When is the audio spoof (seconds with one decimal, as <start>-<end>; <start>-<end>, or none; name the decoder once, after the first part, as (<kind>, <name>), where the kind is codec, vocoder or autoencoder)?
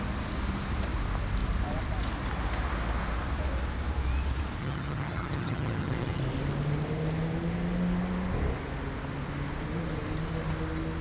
4.6-6.2 (vocoder, HiFi-GAN)